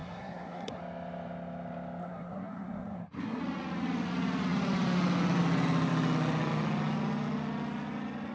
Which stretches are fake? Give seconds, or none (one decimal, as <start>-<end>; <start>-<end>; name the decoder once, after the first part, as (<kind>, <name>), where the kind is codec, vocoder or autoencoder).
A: 0.0-0.8 (codec, SNAC); 2.0-3.4